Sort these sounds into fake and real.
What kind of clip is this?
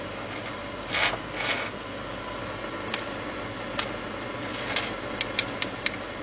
real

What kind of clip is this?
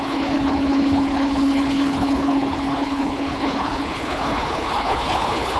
fake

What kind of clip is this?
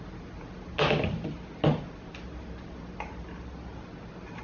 real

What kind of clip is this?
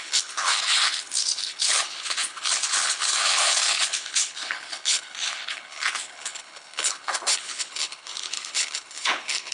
fake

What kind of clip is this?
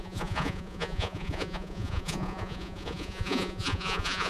fake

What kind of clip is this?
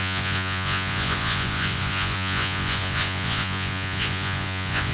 fake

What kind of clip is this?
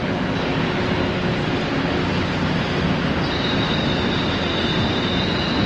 real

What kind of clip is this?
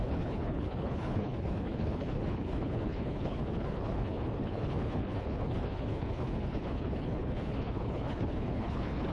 fake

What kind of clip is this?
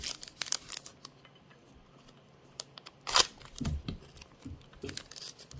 real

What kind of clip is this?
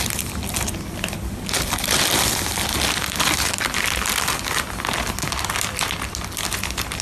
real